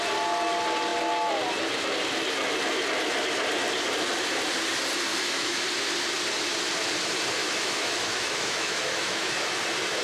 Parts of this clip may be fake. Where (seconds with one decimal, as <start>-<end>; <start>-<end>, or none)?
5.1-5.6; 7.4-9.5